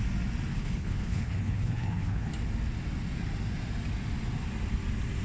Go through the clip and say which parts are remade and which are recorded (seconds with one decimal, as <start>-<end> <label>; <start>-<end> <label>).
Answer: 0.0-0.5 recorded; 0.5-2.3 remade; 2.3-5.2 recorded